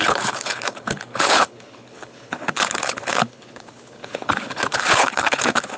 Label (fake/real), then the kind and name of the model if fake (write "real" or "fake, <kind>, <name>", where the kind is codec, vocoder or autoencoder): fake, codec, HILCodec